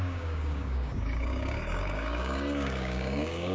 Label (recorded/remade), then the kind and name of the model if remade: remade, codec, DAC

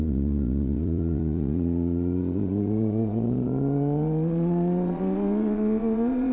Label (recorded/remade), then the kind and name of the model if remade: remade, vocoder, Vocos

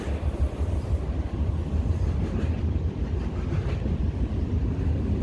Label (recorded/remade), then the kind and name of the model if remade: recorded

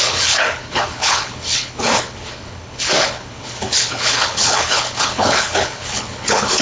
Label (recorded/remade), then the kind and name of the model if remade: remade, codec, HILCodec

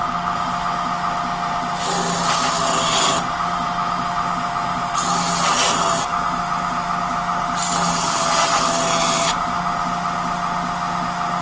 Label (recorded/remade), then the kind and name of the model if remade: recorded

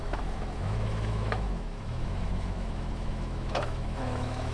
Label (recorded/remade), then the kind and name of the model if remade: remade, autoencoder, DAC-VAE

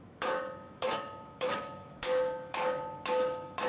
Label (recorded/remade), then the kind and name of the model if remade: remade, autoencoder, DAC-VAE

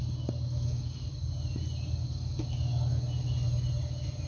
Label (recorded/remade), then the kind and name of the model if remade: recorded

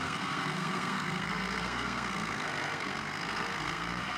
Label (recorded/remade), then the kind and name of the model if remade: remade, codec, SNAC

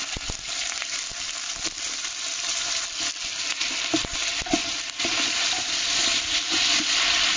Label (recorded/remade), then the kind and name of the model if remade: recorded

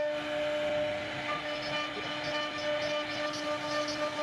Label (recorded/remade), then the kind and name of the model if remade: recorded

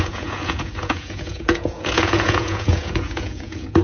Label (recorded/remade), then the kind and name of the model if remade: remade, vocoder, Vocos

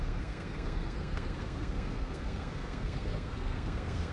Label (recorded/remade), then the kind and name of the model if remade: remade, codec, SNAC